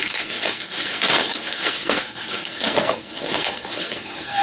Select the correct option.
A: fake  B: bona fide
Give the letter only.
A